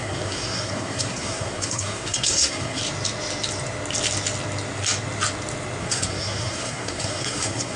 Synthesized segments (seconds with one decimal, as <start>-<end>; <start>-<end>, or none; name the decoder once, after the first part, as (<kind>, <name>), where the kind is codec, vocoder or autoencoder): 0.0-2.8 (codec, SNAC); 5.8-7.8